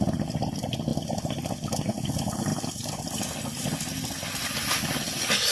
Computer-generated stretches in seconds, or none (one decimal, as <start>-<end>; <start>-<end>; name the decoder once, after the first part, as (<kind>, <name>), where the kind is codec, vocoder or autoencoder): 0.9-1.8 (vocoder, BigVGAN v2); 2.5-3.9